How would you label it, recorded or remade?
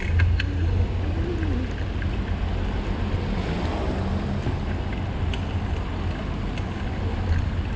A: recorded